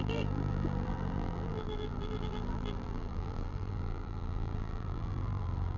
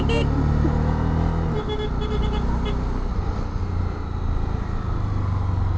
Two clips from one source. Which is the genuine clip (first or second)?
second